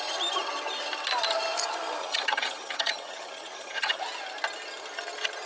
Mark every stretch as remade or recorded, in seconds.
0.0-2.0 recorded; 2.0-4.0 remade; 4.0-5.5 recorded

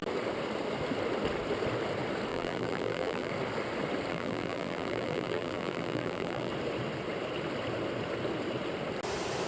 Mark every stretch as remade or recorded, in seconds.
0.0-2.3 recorded; 2.3-3.3 remade; 3.3-4.1 recorded; 4.1-6.5 remade; 6.5-9.5 recorded